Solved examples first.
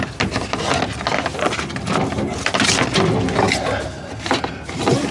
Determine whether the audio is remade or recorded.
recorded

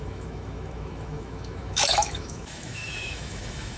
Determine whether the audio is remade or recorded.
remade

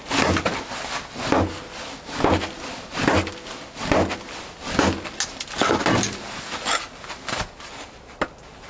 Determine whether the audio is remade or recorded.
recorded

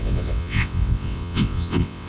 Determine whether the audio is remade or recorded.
remade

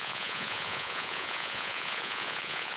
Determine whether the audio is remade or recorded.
remade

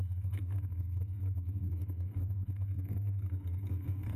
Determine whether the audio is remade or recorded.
remade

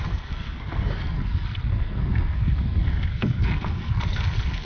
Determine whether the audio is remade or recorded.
remade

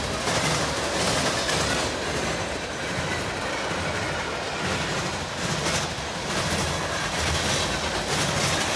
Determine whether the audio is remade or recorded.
recorded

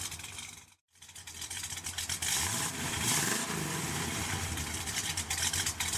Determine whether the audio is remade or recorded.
remade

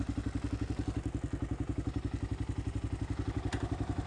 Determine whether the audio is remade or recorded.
recorded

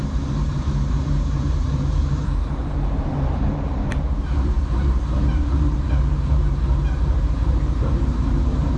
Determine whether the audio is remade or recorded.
remade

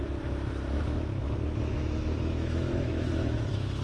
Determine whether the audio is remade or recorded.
remade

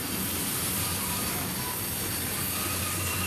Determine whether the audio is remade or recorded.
recorded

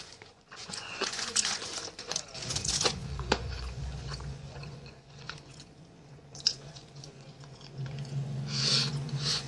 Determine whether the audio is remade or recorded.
remade